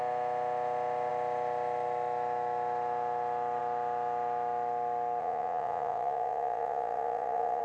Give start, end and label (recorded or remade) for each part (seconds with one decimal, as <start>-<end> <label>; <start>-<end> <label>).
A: 0.0-5.2 recorded; 5.2-7.6 remade